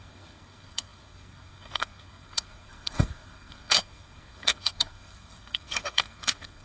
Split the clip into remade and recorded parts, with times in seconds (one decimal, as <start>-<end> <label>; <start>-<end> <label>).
0.0-6.6 remade